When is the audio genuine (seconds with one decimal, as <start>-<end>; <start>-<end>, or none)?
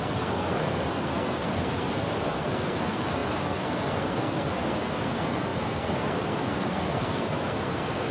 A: none